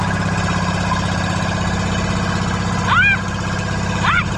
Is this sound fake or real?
real